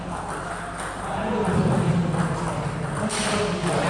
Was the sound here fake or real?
real